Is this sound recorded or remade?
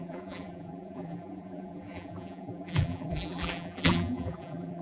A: remade